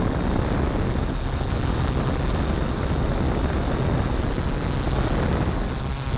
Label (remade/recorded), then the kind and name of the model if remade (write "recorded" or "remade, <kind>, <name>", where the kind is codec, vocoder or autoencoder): recorded